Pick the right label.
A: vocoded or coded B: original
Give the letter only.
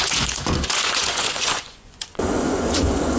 A